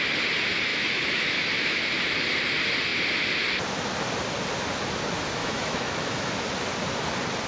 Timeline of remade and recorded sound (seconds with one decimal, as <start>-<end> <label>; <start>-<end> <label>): 0.0-0.7 recorded; 0.7-1.8 remade; 1.8-5.4 recorded; 5.4-6.3 remade; 6.3-7.5 recorded